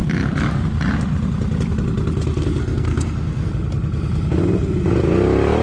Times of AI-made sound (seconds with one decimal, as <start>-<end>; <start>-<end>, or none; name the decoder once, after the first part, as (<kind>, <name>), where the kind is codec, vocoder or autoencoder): 2.6-3.5 (codec, SNAC)